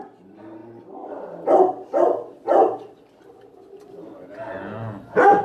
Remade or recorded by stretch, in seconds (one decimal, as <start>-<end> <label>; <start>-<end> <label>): 0.0-5.4 recorded